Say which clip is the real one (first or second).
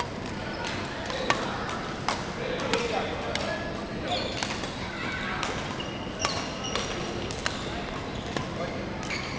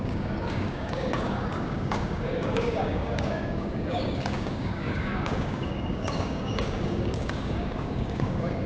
first